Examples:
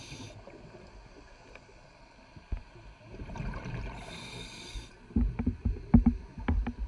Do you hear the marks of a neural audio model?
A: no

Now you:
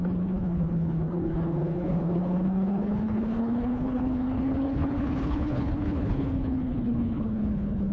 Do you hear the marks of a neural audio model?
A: yes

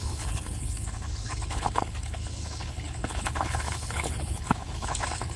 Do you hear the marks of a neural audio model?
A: yes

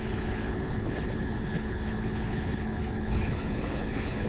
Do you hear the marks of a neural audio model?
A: yes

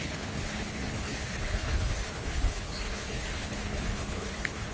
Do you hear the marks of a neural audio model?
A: yes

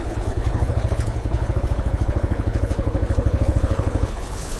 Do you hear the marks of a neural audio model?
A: yes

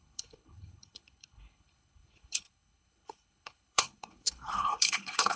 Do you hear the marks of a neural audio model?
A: yes